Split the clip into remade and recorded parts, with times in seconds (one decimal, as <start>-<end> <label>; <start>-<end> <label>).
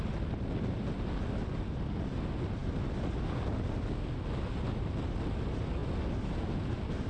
0.0-7.1 recorded